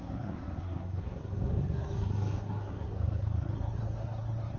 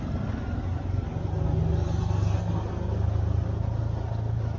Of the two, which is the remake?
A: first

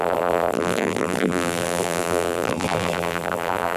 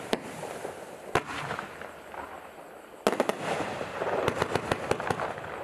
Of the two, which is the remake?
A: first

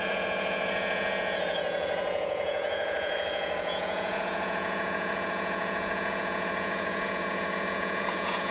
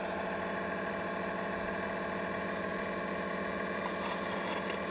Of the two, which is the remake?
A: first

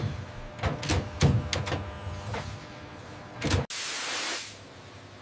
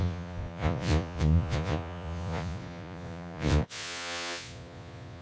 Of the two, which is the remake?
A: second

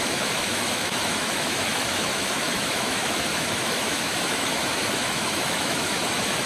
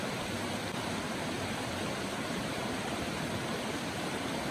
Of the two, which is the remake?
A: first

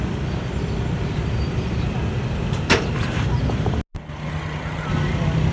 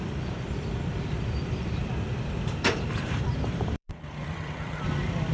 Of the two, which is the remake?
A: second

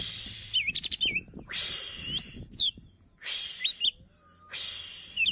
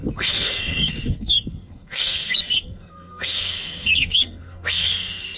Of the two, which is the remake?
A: second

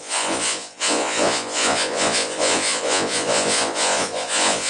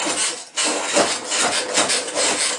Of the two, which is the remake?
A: first